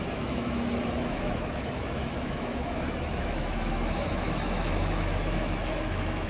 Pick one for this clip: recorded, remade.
remade